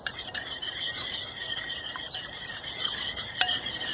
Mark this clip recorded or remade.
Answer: remade